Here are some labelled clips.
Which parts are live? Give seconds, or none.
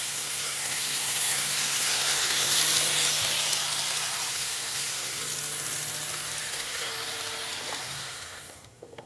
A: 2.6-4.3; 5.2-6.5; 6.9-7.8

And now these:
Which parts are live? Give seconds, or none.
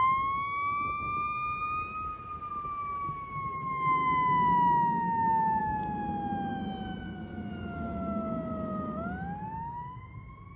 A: 0.0-10.6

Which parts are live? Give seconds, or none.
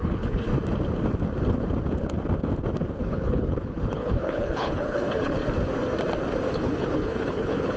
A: 0.5-2.9; 5.4-6.5